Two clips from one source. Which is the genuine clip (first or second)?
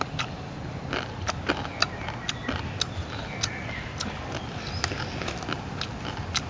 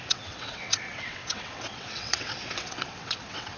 first